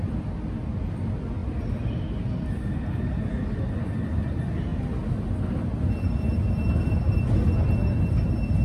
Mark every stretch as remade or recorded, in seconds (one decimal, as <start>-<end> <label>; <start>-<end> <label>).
0.0-8.6 recorded